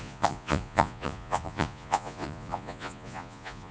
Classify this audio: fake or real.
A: fake